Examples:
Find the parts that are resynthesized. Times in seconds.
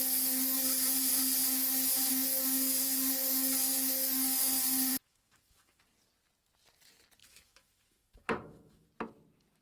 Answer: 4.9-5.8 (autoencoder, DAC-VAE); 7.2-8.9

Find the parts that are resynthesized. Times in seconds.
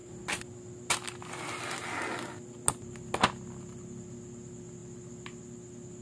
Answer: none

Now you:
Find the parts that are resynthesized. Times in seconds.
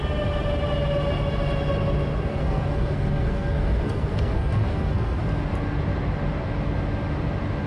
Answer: 2.3-5.2 (codec, SNAC)